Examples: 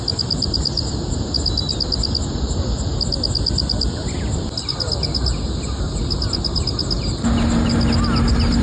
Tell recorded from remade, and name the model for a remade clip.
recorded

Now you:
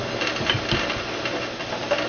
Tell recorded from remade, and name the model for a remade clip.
recorded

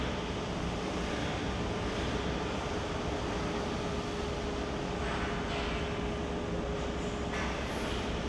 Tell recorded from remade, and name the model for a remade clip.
recorded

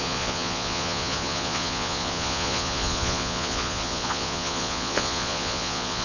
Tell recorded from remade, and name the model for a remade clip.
remade, vocoder, Vocos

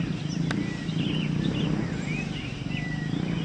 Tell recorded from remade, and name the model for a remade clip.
recorded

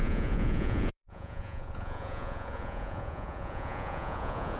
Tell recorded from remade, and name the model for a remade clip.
remade, vocoder, Vocos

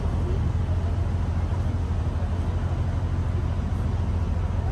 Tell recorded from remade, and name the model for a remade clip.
recorded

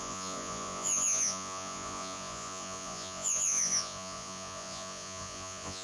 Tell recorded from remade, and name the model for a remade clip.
remade, vocoder, Vocos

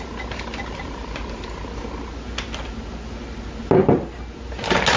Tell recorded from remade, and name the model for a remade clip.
recorded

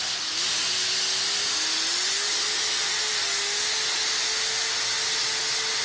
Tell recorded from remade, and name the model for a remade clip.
recorded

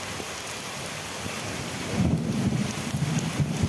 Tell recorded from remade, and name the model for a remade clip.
recorded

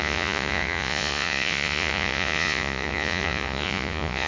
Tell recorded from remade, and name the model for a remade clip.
remade, vocoder, Vocos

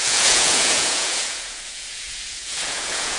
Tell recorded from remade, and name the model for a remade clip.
remade, vocoder, Vocos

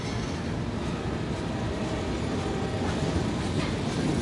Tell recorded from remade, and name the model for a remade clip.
recorded